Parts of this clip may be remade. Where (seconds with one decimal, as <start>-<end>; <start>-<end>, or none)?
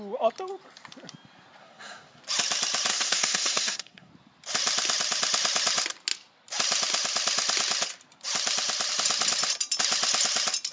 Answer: 1.6-2.2; 2.9-4.1